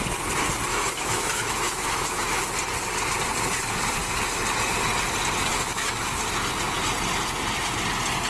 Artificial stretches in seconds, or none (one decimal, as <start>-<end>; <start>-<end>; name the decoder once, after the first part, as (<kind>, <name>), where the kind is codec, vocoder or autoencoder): 0.7-2.5 (autoencoder, DAC-VAE); 5.5-6.2